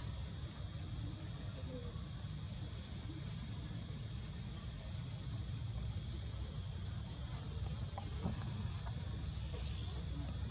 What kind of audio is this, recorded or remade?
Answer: recorded